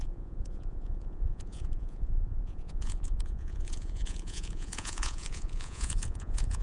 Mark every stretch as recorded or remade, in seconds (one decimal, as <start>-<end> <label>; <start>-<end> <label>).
0.0-6.6 remade